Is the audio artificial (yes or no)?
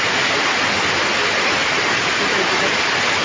no